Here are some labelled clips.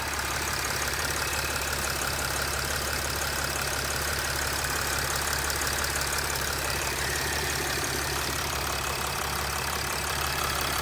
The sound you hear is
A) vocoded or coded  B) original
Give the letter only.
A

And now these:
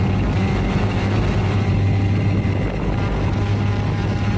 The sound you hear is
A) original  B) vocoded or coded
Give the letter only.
A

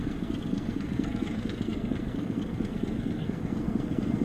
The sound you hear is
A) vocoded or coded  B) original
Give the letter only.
A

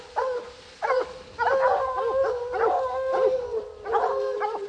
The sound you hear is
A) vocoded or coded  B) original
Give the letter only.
B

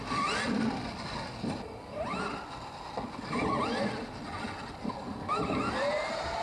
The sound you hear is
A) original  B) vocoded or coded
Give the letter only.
A